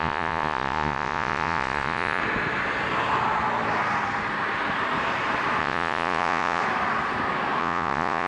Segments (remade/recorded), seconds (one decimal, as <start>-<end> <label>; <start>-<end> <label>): 0.0-2.2 remade; 2.2-5.6 recorded; 5.6-6.6 remade; 6.6-7.6 recorded; 7.6-8.3 remade